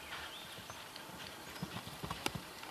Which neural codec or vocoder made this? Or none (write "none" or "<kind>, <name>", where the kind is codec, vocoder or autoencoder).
none